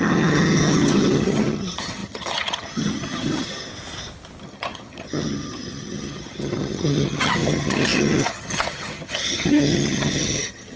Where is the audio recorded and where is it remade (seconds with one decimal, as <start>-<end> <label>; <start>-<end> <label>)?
0.0-3.7 remade; 3.7-4.4 recorded; 4.4-10.8 remade